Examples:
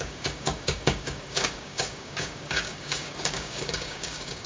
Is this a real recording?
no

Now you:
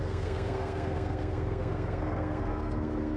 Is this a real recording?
no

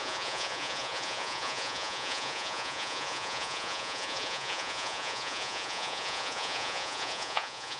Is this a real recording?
no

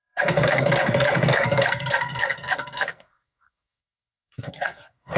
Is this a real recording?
no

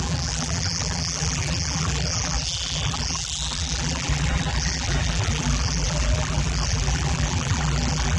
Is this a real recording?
no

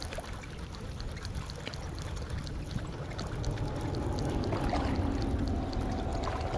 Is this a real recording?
yes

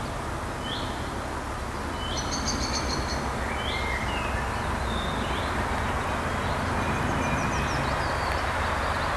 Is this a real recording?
yes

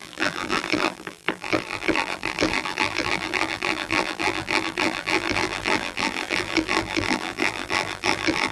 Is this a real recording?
no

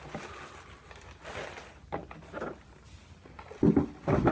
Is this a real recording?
yes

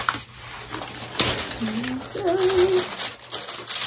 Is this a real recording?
yes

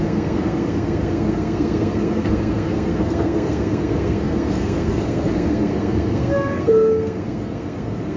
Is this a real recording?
no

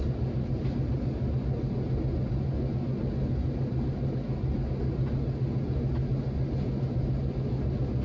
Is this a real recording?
yes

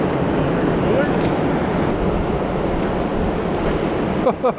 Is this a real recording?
yes